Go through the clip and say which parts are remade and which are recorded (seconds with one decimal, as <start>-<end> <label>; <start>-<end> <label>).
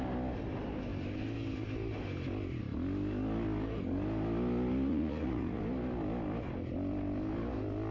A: 0.0-4.9 recorded; 4.9-5.6 remade; 5.6-7.9 recorded